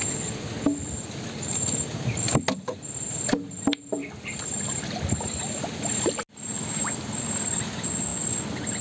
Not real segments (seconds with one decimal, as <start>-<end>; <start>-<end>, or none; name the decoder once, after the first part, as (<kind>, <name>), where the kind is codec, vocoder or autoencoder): none